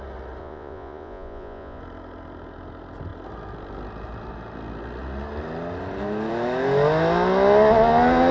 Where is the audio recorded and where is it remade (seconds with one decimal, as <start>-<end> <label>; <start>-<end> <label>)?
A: 0.0-0.4 recorded; 0.4-1.8 remade; 1.8-8.3 recorded